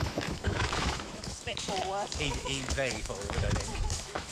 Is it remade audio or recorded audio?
remade